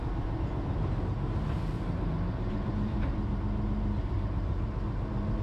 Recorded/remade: recorded